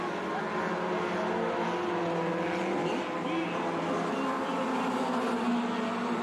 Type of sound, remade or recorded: recorded